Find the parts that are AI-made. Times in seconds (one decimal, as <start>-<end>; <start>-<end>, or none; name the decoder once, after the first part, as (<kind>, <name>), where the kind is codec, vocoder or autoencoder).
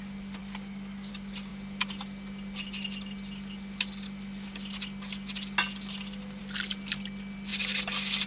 0.4-1.1 (codec, DAC)